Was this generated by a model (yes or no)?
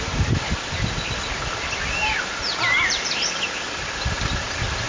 no